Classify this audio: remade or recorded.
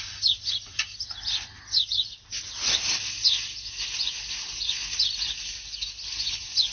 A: recorded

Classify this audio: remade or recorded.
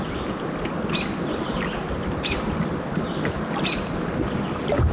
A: recorded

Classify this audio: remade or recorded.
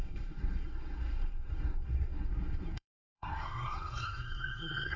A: remade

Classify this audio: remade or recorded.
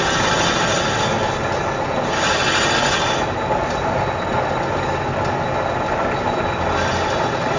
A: recorded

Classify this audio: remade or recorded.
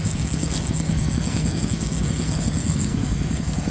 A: remade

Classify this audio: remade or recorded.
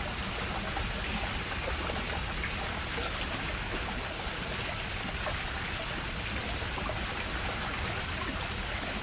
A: recorded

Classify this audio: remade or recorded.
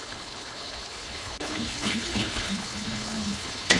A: remade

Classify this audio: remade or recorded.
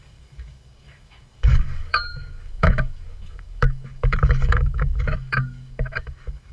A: remade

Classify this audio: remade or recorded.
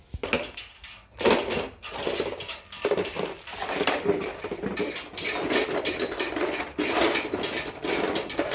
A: recorded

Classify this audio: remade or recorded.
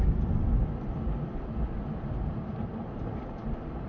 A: recorded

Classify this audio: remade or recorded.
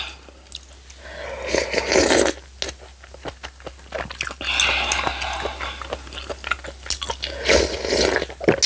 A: recorded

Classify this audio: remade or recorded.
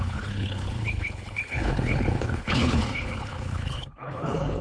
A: remade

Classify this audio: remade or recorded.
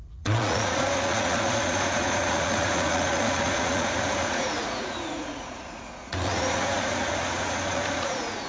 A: remade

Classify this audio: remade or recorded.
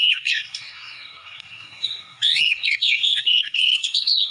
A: remade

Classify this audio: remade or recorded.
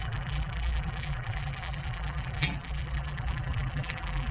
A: remade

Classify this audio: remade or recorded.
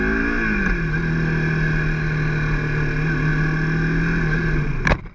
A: recorded